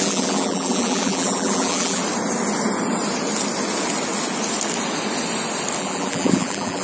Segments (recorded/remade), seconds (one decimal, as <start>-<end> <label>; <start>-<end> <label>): 0.0-2.0 remade; 2.0-5.8 recorded; 5.8-6.8 remade